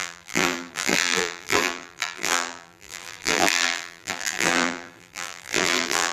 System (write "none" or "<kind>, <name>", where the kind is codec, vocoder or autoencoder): vocoder, BigVGAN v2